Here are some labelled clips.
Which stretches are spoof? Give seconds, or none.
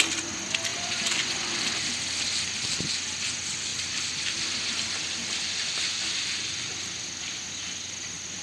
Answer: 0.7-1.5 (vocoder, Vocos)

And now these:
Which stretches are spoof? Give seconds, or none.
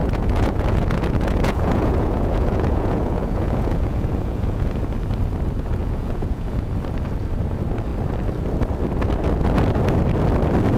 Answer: 0.0-4.8 (vocoder, Vocos); 5.8-6.7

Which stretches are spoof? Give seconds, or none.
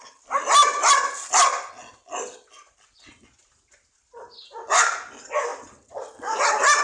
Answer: none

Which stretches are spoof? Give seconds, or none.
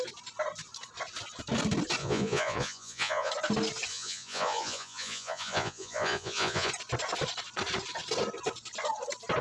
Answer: 2.0-3.3 (vocoder, Vocos); 3.9-6.7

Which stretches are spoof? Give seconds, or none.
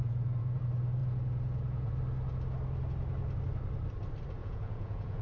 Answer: 0.0-0.6 (vocoder, Vocos); 1.0-1.9; 4.4-5.2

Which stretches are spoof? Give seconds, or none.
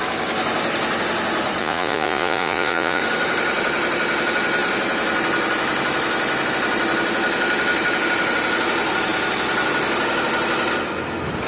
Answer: 1.6-3.0 (vocoder, Vocos)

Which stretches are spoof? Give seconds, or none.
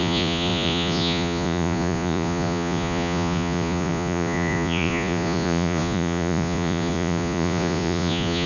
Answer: 0.0-8.5 (vocoder, Vocos)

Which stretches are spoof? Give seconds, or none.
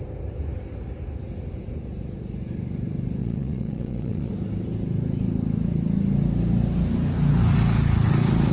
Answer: 3.2-4.3 (vocoder, Vocos)